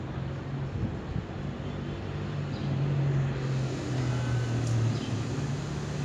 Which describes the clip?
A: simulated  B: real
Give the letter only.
B